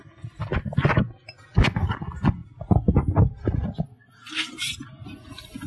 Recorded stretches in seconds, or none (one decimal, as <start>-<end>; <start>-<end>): 0.0-5.7